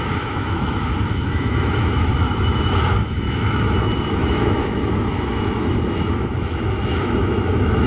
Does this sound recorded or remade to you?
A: remade